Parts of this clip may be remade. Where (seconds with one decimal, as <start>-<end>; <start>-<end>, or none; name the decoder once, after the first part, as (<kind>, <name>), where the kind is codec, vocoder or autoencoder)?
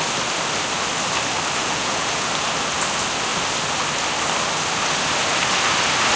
1.6-2.3 (vocoder, Vocos)